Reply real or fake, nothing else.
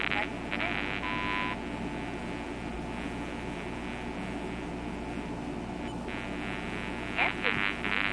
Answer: real